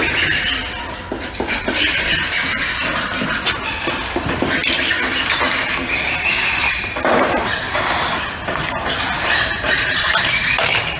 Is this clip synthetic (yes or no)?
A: no